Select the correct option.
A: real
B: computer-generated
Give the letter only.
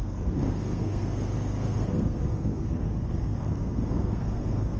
B